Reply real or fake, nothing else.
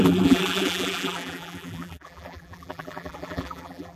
fake